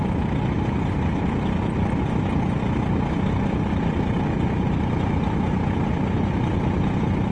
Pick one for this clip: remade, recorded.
recorded